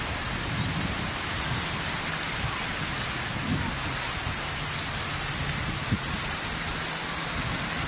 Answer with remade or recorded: recorded